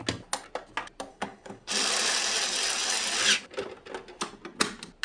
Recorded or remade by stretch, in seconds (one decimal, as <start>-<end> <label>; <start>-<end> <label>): 0.0-1.1 recorded; 1.1-1.7 remade; 1.7-5.0 recorded